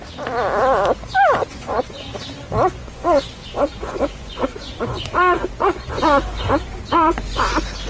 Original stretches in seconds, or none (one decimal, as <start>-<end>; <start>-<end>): 0.0-1.5; 2.1-2.8; 7.5-7.9